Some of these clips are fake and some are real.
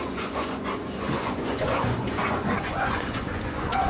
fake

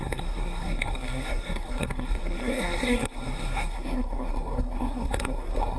fake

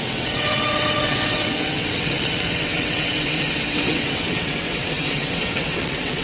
fake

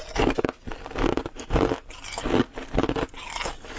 real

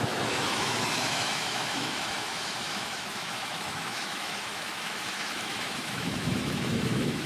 fake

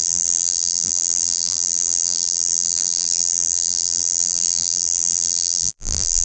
fake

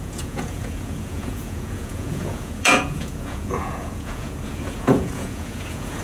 fake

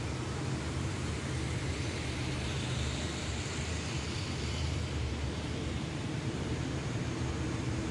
fake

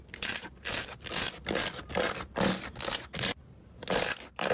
real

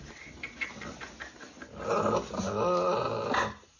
real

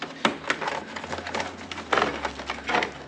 real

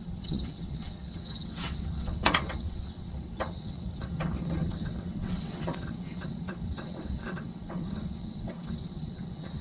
fake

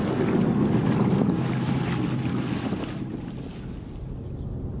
real